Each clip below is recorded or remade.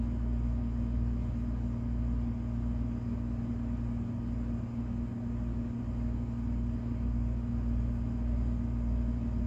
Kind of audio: recorded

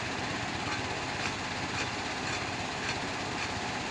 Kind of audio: recorded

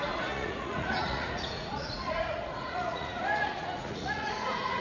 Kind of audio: remade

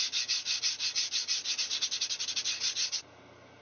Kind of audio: recorded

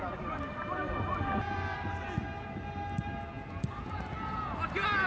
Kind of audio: recorded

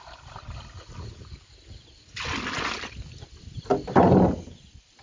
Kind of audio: recorded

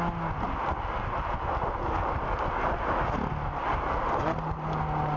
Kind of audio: recorded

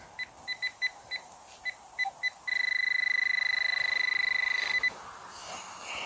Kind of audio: recorded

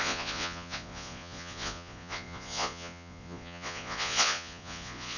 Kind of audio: remade